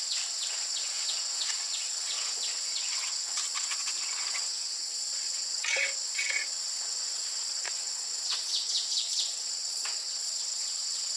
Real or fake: fake